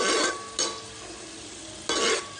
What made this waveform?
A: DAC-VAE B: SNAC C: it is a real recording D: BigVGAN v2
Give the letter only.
C